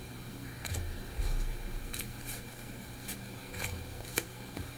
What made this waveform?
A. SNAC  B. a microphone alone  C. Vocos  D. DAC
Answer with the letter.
A